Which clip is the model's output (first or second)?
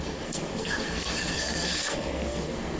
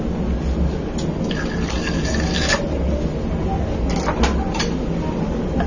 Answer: first